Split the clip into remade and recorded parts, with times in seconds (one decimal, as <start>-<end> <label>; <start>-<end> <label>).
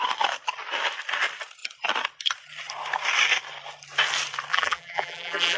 0.0-4.5 recorded; 4.5-5.6 remade